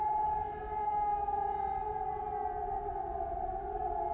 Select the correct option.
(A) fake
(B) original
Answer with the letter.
B